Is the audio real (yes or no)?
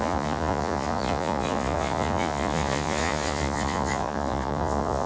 no